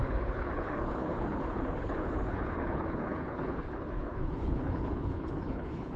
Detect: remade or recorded remade